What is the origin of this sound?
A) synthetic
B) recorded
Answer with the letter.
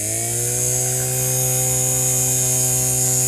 B